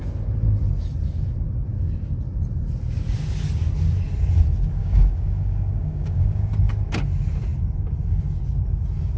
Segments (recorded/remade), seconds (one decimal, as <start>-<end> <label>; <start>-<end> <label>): 0.0-4.8 recorded; 4.8-6.5 remade; 6.5-9.2 recorded